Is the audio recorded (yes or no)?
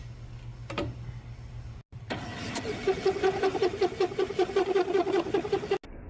yes